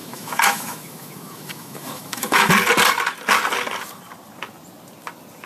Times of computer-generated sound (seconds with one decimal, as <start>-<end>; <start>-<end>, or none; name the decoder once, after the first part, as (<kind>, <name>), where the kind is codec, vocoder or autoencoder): 0.0-2.5 (autoencoder, DAC-VAE)